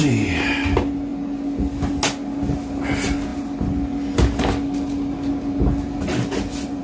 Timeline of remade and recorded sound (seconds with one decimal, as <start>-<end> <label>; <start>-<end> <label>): 0.0-6.8 recorded